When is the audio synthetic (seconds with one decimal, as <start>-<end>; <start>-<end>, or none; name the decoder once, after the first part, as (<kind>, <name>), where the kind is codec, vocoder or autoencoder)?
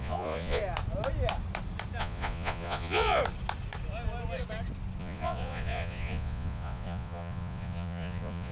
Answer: 0.0-0.6 (vocoder, Vocos); 2.0-3.2; 5.0-8.5